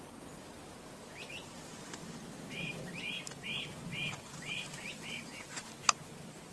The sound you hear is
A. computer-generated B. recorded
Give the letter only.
B